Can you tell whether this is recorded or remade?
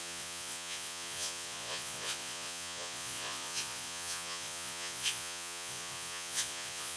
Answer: remade